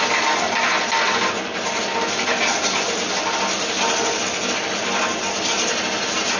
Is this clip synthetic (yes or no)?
no